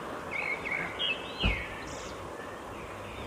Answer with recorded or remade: recorded